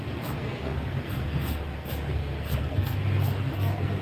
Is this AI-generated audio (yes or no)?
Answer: yes